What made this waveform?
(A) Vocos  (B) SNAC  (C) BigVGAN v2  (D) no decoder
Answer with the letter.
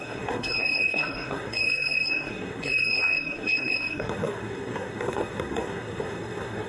B